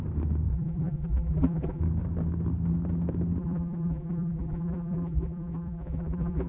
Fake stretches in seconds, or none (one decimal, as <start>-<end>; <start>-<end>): 0.5-1.8; 3.4-6.5